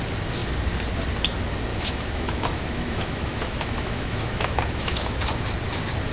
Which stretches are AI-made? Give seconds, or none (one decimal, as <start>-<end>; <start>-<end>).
1.7-5.2